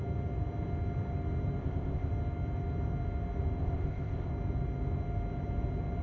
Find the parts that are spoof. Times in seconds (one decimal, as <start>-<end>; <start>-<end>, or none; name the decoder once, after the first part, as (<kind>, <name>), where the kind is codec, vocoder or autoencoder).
1.6-2.1 (codec, ZipCodec); 3.6-4.3